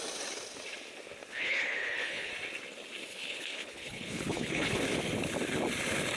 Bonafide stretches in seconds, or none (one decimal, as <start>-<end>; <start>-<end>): 0.0-1.3; 2.3-3.1; 4.8-6.2